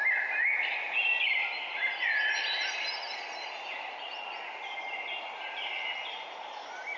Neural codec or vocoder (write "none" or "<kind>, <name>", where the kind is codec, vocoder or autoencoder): none